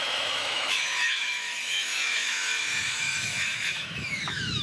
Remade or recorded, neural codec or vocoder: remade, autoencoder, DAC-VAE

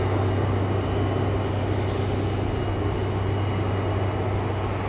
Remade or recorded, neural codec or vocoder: recorded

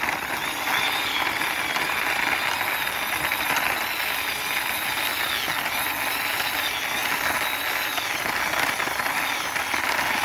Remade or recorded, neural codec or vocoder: recorded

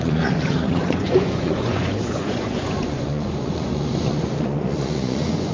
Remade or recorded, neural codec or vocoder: remade, vocoder, Vocos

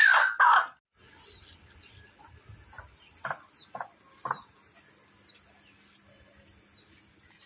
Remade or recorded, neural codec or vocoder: recorded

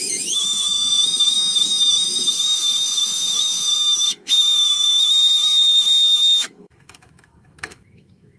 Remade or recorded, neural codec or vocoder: remade, autoencoder, DAC-VAE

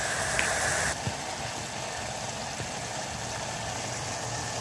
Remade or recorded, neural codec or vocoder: recorded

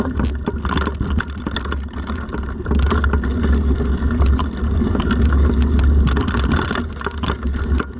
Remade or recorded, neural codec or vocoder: recorded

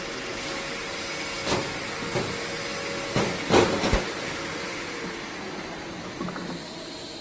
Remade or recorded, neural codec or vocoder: recorded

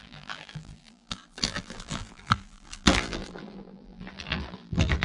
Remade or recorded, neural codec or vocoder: remade, vocoder, BigVGAN v2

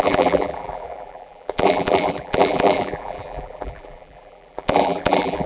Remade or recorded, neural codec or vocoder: remade, vocoder, BigVGAN v2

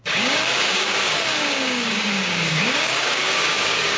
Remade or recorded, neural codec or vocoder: remade, codec, DAC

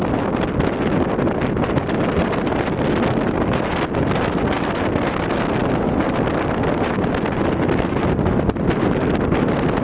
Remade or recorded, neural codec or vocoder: recorded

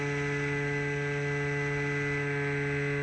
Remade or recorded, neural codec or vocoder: recorded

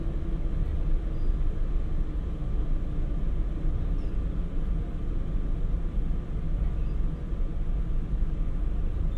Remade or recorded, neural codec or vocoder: recorded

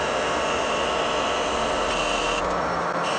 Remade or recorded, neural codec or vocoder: recorded